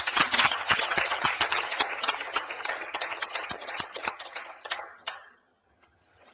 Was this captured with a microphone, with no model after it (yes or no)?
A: no